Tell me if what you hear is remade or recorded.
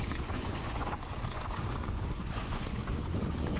remade